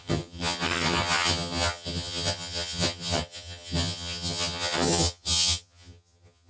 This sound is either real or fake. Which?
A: fake